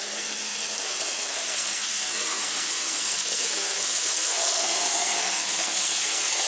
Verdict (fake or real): fake